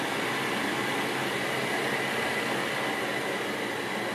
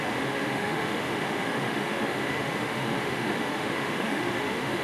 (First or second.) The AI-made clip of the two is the second